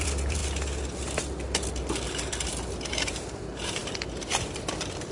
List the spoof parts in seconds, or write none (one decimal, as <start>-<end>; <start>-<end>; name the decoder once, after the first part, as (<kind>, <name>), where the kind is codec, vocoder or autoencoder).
0.0-0.4 (vocoder, BigVGAN v2); 1.3-5.1